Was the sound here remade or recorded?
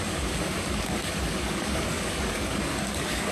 remade